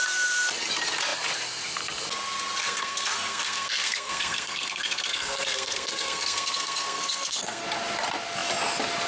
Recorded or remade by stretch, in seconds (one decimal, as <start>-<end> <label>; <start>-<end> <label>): 0.0-2.6 recorded; 2.6-7.6 remade; 7.6-9.1 recorded